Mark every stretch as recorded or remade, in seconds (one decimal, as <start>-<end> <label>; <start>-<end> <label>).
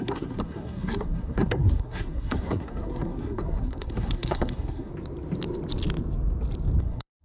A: 0.0-4.9 remade; 4.9-6.8 recorded; 6.8-7.2 remade